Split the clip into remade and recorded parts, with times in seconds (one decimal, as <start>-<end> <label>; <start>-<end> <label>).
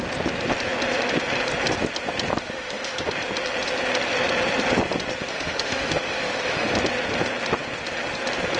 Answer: 0.0-2.4 recorded; 2.4-3.1 remade; 3.1-5.3 recorded; 5.3-6.7 remade; 6.7-8.6 recorded